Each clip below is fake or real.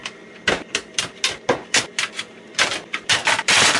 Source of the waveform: real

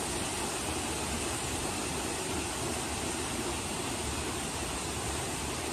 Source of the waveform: real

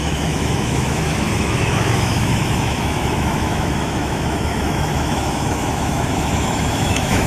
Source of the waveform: fake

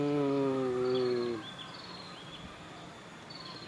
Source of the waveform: real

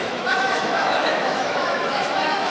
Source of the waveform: fake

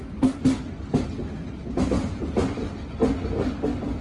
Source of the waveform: real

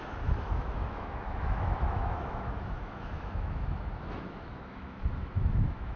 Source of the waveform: fake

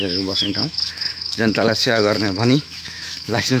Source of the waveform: fake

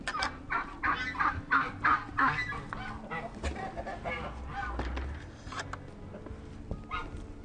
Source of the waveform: real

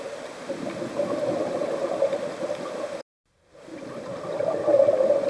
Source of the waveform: real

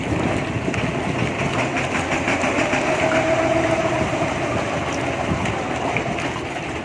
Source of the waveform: real